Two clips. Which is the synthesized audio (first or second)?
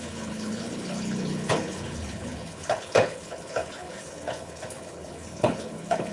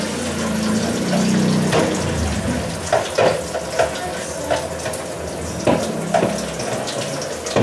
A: first